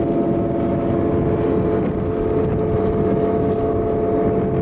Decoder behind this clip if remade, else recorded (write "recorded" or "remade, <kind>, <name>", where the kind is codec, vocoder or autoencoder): recorded